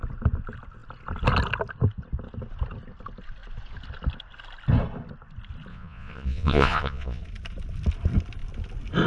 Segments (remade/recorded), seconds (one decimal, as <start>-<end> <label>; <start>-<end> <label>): 0.0-5.7 recorded; 5.7-7.2 remade; 7.2-9.1 recorded